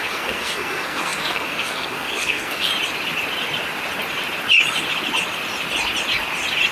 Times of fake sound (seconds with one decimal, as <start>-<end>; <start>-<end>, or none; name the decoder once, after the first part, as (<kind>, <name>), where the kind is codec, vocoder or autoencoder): 0.0-2.7 (codec, SNAC)